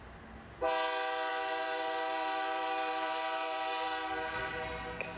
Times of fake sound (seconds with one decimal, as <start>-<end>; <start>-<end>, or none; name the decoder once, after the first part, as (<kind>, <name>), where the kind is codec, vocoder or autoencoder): 1.3-4.4 (vocoder, BigVGAN v2)